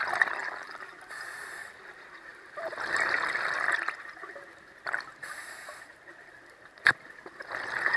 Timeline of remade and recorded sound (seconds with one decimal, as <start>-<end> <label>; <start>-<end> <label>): 0.0-0.4 recorded; 0.4-1.0 remade; 1.0-8.0 recorded